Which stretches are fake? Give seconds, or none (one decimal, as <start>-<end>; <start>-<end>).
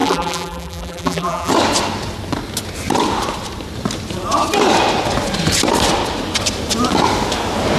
0.0-1.5